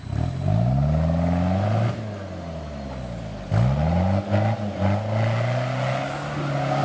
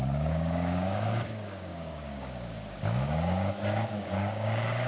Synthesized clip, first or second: second